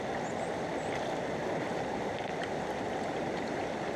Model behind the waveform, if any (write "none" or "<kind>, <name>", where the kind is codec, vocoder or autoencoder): none